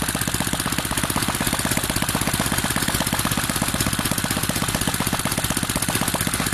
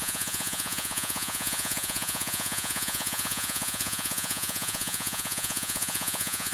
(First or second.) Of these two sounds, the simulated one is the second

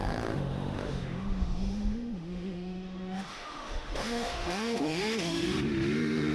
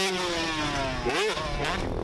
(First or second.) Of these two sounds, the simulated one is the first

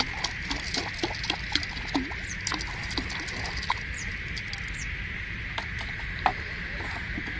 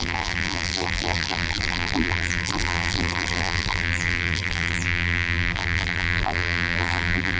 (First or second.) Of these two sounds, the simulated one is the second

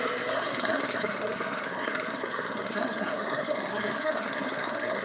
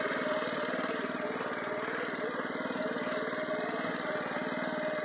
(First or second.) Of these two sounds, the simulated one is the first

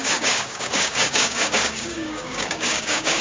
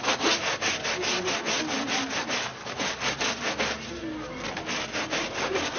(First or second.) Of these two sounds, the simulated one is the first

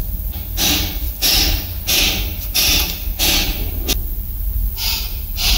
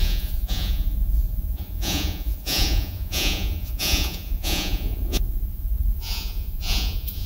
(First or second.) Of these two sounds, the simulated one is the second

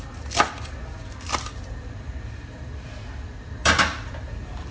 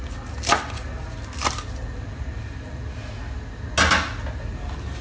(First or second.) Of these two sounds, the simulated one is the first